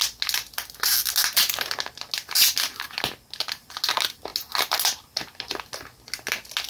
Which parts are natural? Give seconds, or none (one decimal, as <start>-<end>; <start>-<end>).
0.0-6.7